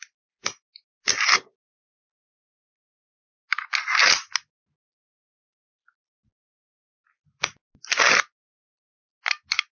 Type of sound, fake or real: real